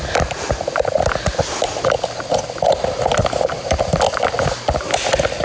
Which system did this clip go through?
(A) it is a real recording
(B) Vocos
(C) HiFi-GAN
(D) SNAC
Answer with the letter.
A